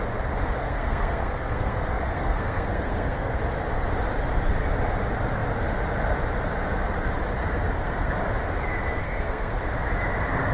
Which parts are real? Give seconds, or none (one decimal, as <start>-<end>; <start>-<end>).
0.0-0.6; 3.4-7.4; 8.1-9.0; 9.6-10.5